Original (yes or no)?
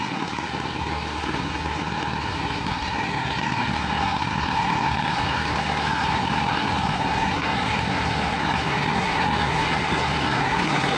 no